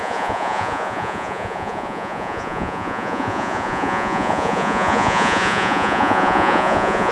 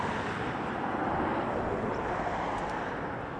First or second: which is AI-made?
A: first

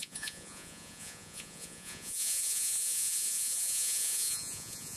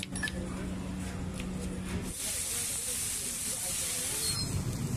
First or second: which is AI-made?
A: first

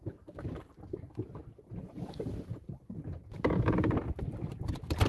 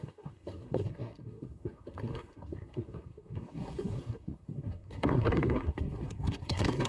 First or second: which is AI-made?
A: second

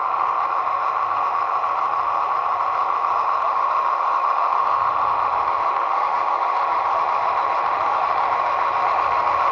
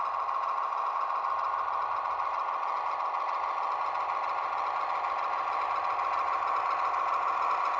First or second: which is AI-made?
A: first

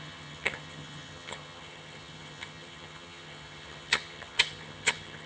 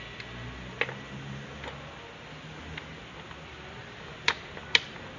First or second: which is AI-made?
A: first